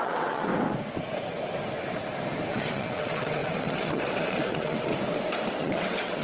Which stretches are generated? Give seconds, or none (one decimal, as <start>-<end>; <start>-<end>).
0.0-0.5; 2.5-4.9; 5.6-6.2